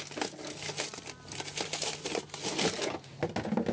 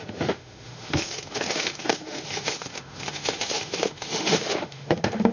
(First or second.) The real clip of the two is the first